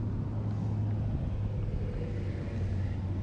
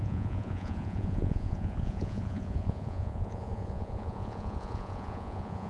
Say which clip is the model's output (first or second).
second